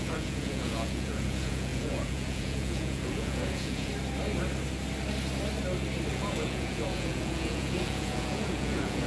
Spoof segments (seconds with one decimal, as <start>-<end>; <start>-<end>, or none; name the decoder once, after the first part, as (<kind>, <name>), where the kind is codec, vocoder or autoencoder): 0.0-3.9 (vocoder, Vocos); 6.1-9.1